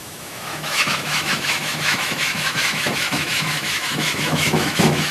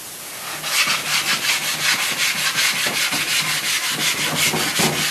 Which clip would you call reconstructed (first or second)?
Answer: first